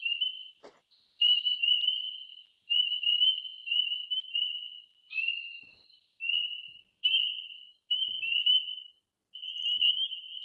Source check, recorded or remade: remade